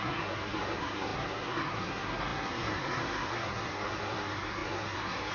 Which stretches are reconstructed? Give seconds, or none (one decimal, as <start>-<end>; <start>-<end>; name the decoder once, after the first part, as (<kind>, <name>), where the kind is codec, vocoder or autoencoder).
0.0-5.3 (codec, SNAC)